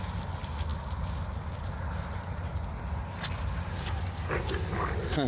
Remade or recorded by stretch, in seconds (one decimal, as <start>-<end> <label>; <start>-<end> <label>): 0.0-5.3 recorded